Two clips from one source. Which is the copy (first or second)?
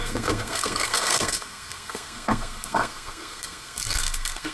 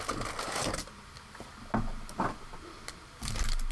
first